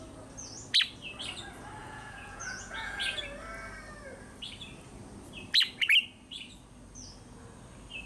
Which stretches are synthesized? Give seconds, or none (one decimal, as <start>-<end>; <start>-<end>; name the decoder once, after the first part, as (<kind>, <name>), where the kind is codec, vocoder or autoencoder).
1.8-3.2 (vocoder, Vocos)